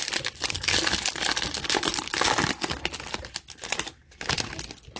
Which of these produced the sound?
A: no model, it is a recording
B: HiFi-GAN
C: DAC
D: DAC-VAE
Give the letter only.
A